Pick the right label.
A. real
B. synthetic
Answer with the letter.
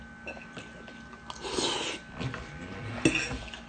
A